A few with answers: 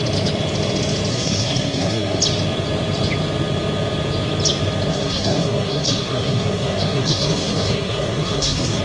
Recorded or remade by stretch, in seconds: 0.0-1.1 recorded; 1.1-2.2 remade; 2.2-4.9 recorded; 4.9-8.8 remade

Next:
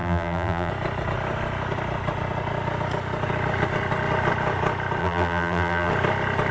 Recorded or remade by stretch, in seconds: 0.0-0.7 remade; 0.7-5.0 recorded; 5.0-5.9 remade; 5.9-6.5 recorded

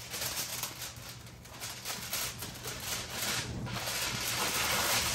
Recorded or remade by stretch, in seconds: 0.0-5.1 recorded

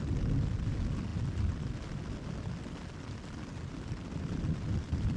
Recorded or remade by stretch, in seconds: 0.0-5.2 recorded